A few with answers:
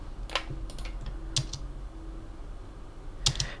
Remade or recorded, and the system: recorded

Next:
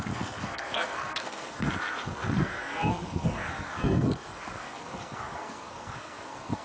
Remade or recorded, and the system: remade, codec, SNAC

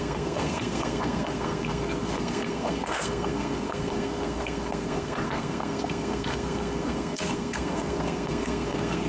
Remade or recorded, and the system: remade, codec, SNAC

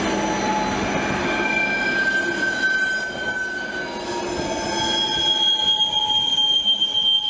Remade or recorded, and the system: recorded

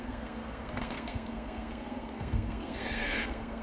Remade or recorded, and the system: remade, codec, SNAC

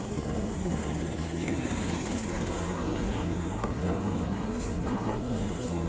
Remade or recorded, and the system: remade, codec, SNAC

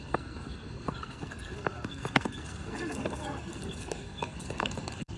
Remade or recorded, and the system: remade, codec, SNAC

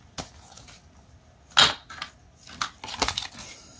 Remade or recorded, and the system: recorded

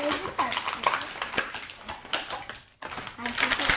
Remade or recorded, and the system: recorded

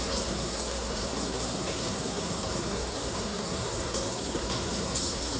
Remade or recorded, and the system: remade, codec, SNAC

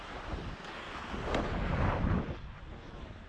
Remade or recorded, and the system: recorded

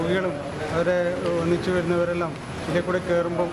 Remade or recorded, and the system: recorded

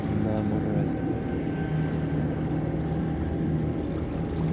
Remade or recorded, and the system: recorded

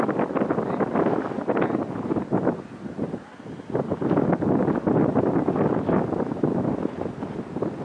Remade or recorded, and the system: recorded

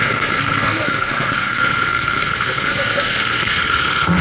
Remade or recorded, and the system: remade, codec, SNAC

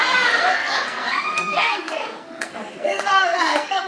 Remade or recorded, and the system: remade, codec, SNAC